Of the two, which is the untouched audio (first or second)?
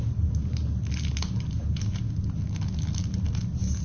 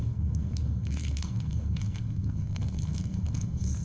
first